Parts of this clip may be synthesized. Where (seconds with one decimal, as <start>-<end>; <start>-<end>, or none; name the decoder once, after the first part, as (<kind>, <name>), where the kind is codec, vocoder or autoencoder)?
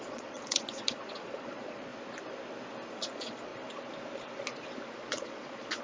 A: 0.0-1.9 (vocoder, Vocos); 2.9-3.5; 5.1-5.8